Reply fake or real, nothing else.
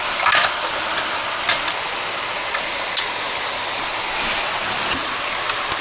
real